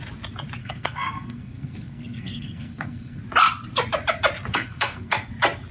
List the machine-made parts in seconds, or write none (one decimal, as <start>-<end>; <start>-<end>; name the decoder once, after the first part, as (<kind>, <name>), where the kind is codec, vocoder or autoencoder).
0.6-3.2 (codec, SNAC); 4.5-5.3